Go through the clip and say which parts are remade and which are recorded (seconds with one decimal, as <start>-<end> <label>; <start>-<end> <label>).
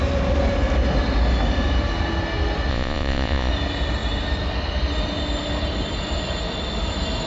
0.0-2.7 recorded; 2.7-3.5 remade; 3.5-7.3 recorded